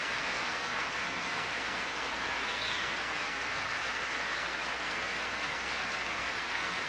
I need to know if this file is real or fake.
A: fake